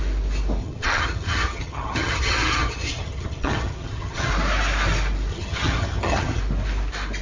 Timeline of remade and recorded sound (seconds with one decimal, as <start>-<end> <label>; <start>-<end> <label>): 0.0-0.6 recorded; 0.6-4.3 remade; 4.3-5.3 recorded; 5.3-6.4 remade; 6.4-7.2 recorded